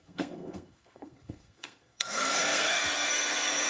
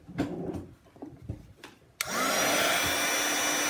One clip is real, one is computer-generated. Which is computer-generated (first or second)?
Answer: first